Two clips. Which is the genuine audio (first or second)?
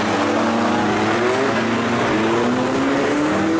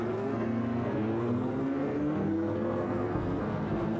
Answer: first